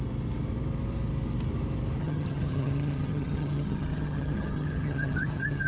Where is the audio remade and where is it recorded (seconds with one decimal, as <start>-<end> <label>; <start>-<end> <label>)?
0.0-2.0 recorded; 2.0-5.7 remade